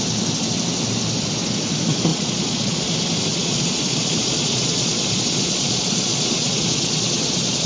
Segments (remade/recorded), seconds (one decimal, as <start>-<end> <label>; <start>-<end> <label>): 0.0-2.1 recorded; 2.1-2.9 remade; 2.9-3.3 recorded; 3.3-7.7 remade